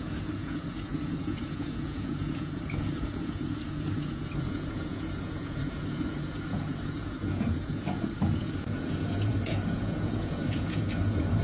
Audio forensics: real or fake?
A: fake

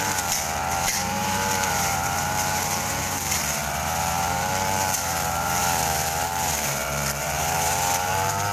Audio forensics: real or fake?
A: fake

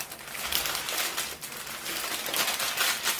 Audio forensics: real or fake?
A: real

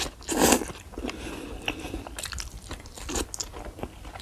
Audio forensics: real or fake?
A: real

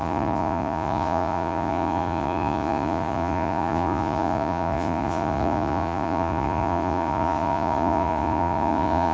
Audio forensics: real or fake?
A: fake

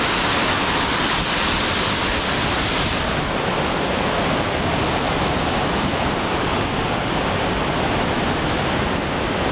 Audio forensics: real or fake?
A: real